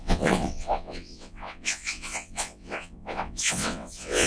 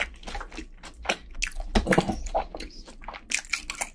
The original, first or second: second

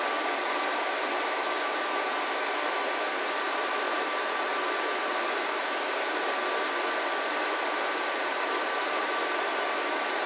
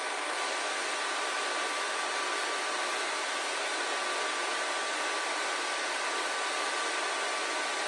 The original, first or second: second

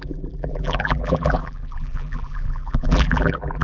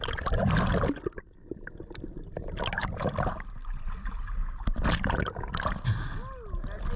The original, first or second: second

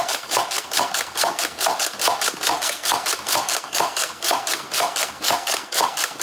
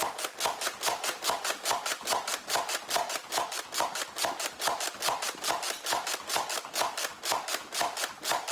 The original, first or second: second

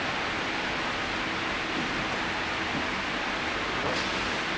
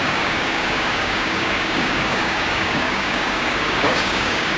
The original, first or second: first